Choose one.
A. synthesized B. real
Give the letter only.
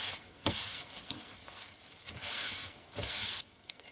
A